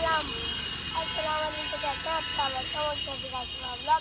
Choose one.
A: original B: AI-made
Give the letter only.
A